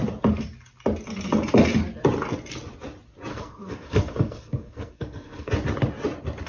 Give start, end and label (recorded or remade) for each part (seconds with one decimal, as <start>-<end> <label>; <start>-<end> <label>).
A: 0.0-3.3 recorded; 3.3-5.5 remade; 5.5-6.5 recorded